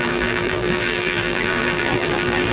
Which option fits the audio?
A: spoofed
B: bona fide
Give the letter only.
A